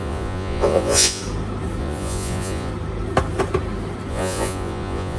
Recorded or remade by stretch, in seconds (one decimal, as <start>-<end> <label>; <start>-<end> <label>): 0.0-1.2 remade; 1.2-1.8 recorded; 1.8-2.7 remade; 2.7-4.1 recorded; 4.1-5.2 remade